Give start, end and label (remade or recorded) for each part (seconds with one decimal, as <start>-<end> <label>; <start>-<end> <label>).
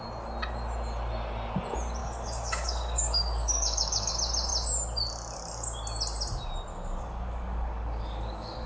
0.0-2.0 recorded; 2.0-4.1 remade; 4.1-6.7 recorded; 6.7-8.7 remade